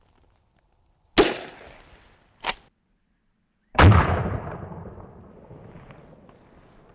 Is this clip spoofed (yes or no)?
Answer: no